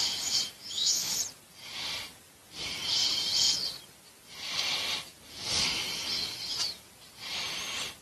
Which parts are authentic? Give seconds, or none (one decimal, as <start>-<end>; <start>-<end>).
0.0-0.6; 1.1-8.0